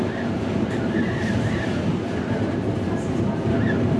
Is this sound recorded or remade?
remade